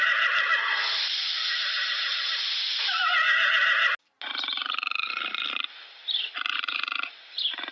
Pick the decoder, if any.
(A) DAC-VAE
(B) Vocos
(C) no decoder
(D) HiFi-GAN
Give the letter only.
C